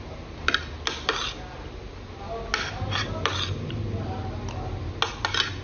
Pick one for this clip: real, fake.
real